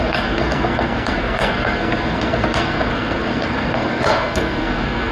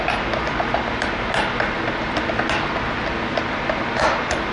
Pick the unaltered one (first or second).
second